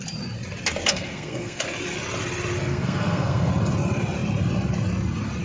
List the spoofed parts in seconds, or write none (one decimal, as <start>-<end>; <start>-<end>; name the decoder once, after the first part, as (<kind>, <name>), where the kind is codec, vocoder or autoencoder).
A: 0.9-1.6 (codec, SNAC); 2.7-3.5